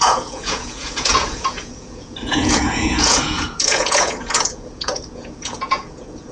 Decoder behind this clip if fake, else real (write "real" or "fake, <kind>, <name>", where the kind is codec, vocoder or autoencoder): fake, vocoder, Vocos